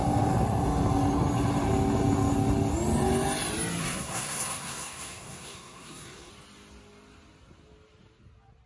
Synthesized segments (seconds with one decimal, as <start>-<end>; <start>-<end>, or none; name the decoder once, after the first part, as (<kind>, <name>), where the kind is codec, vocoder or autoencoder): 3.8-6.3 (codec, SNAC)